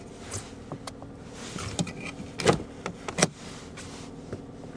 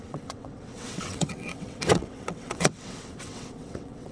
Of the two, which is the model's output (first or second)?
second